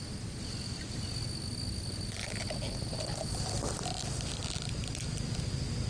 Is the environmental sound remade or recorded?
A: recorded